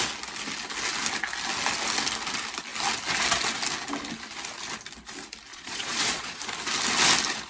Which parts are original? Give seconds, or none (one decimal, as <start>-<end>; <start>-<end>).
0.0-5.5; 6.4-7.5